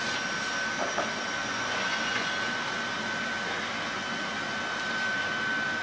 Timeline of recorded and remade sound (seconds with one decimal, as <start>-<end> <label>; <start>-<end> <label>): 0.0-1.4 recorded; 1.4-2.3 remade; 2.3-5.8 recorded